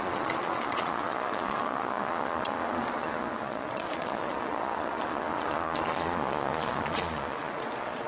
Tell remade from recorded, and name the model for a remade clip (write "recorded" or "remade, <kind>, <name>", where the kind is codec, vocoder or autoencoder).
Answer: remade, vocoder, Vocos